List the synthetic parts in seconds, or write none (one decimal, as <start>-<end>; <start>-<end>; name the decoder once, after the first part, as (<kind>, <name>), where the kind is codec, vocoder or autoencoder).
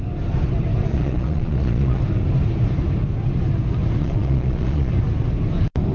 0.9-2.0 (vocoder, Vocos); 4.0-4.9